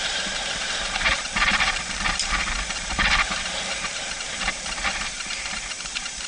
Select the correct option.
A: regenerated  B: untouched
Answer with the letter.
A